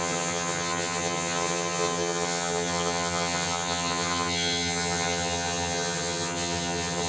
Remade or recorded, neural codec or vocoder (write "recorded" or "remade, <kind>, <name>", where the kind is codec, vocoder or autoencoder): remade, vocoder, HiFi-GAN